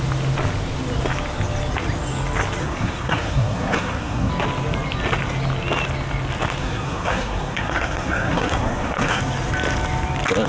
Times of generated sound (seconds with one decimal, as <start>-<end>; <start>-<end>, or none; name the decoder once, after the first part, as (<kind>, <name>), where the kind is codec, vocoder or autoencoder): 2.6-4.3 (codec, SNAC); 6.6-9.2